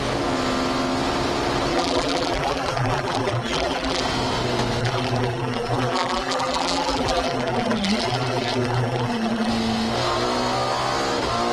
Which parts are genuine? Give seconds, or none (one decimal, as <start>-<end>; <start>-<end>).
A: 0.0-1.7; 4.0-4.8; 9.5-11.5